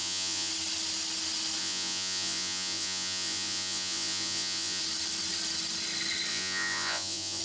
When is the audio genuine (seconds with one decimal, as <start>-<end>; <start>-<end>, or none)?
0.5-1.6; 4.8-6.3